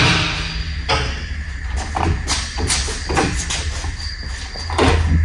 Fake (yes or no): no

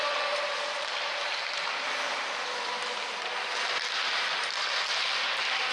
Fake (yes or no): no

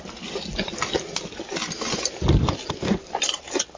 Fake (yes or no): no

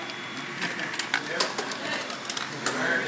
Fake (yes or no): no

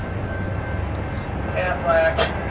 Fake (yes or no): no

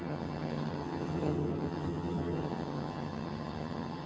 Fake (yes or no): yes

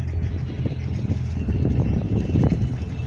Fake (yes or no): no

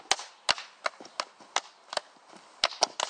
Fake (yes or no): no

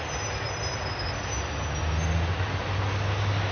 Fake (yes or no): no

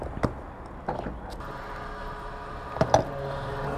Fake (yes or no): no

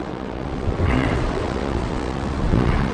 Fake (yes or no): yes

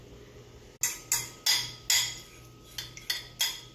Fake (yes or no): no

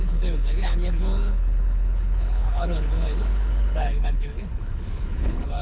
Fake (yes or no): yes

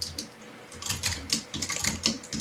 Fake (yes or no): yes